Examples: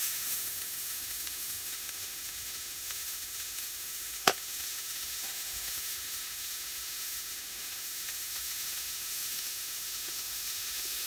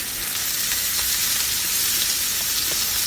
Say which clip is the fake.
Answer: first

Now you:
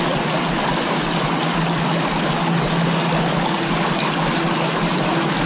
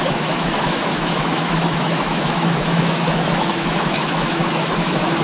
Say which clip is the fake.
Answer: second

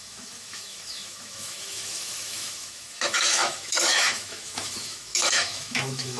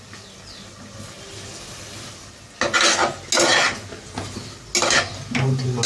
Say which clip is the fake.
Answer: first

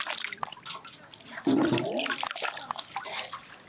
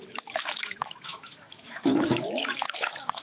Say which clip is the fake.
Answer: second